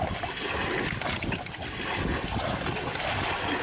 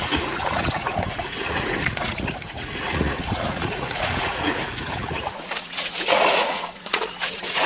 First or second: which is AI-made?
second